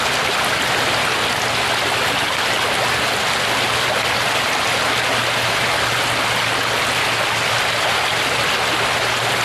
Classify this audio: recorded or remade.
recorded